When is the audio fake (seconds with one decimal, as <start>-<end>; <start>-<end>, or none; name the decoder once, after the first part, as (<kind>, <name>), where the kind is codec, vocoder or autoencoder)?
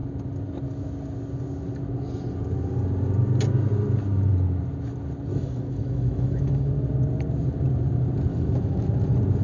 5.3-6.7 (autoencoder, DAC-VAE); 8.3-8.9